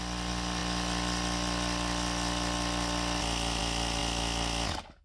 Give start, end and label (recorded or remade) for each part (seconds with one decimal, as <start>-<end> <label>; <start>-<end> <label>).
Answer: 0.0-5.0 recorded